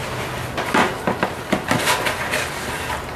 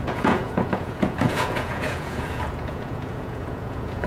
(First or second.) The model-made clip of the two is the second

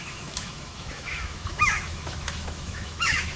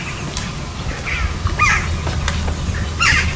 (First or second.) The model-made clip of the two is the first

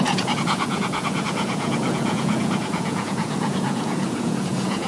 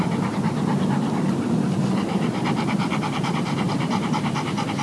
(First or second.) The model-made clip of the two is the first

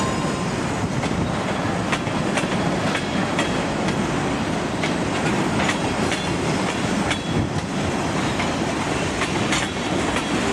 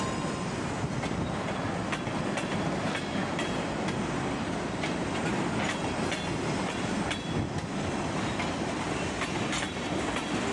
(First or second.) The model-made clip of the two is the first